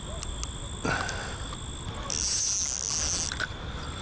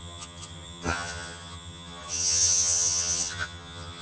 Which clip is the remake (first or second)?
second